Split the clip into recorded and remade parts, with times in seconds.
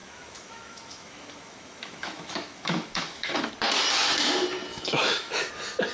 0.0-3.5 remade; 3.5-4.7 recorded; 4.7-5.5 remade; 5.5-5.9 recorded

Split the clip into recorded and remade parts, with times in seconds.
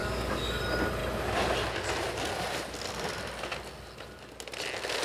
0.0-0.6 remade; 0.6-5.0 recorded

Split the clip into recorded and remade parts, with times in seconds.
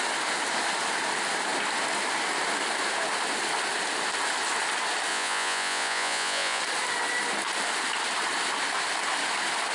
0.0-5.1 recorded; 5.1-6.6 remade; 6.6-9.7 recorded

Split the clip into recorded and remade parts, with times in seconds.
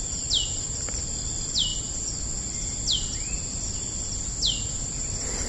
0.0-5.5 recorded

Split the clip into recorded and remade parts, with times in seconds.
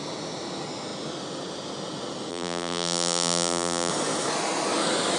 0.0-2.3 recorded; 2.3-3.9 remade; 3.9-5.2 recorded